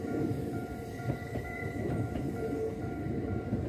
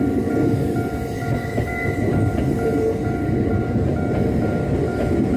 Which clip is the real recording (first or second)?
second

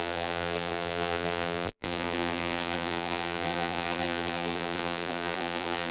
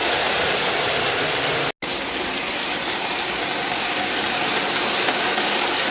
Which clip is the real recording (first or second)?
second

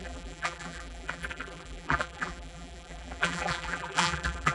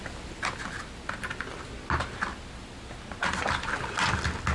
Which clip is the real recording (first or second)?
second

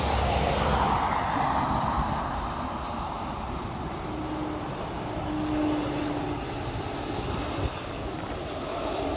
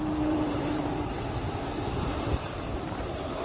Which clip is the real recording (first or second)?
first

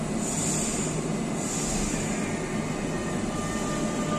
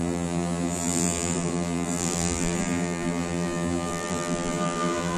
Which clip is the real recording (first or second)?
first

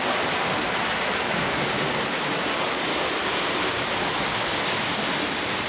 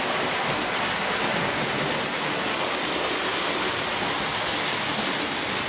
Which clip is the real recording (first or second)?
second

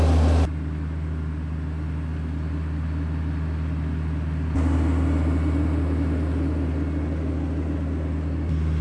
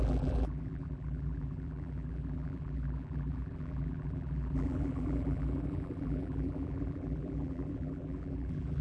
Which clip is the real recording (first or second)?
first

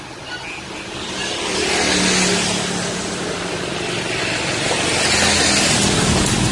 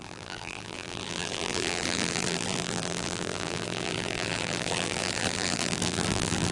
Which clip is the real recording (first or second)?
first